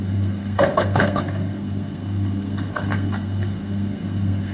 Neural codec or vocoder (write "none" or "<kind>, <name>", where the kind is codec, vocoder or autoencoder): codec, SNAC